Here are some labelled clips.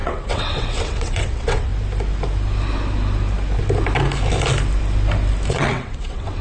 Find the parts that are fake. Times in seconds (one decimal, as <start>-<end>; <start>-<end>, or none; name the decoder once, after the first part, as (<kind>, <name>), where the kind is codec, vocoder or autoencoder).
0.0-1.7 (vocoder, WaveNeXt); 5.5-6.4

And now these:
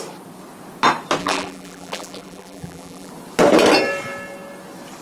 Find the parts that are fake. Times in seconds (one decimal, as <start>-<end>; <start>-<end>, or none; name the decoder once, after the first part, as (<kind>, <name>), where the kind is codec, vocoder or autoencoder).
1.2-3.1 (vocoder, BigVGAN v2)

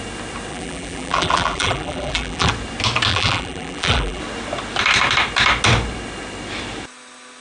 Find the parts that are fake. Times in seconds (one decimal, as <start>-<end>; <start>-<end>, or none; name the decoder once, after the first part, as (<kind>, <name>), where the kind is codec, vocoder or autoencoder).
0.5-2.5 (vocoder, BigVGAN v2); 3.1-4.2